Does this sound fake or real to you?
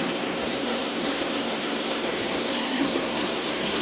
fake